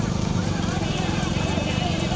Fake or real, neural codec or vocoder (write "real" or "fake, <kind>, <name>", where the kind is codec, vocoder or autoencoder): fake, vocoder, BigVGAN v2